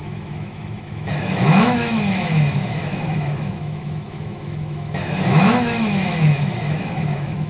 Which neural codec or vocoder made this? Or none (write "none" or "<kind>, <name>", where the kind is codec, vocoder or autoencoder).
autoencoder, DAC-VAE